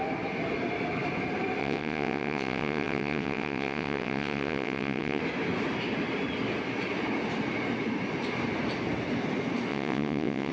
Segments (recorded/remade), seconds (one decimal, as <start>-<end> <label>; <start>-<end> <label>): 0.0-1.6 recorded; 1.6-5.2 remade; 5.2-9.7 recorded; 9.7-10.5 remade